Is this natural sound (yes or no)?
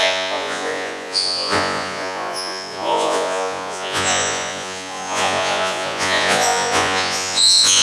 no